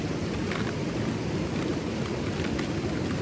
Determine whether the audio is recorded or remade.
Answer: recorded